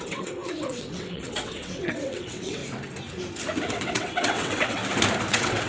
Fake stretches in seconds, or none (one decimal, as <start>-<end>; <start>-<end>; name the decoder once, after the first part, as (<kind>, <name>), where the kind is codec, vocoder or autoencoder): 0.0-2.6 (vocoder, WaveNeXt); 3.7-4.8; 5.3-5.7